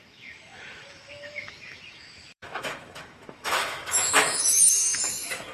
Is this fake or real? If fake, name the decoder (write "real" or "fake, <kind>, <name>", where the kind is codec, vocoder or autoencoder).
fake, autoencoder, DAC-VAE